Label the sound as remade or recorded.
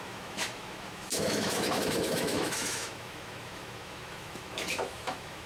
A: remade